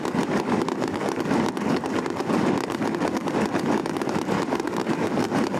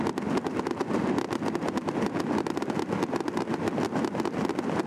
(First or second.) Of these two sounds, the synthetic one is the first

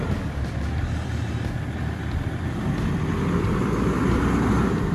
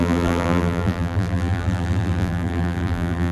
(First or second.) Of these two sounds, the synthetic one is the second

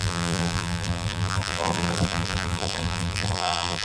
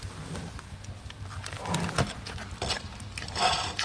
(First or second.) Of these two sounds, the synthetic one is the first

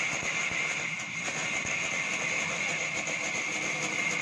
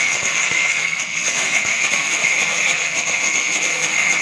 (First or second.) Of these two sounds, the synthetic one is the second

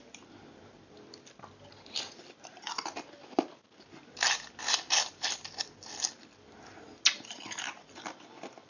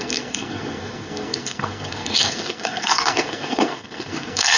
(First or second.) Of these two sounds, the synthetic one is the second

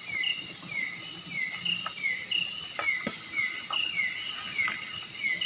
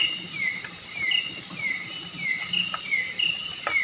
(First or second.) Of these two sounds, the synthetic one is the second